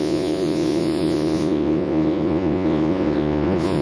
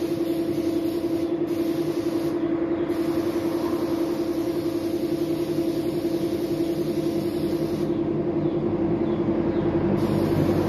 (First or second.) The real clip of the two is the second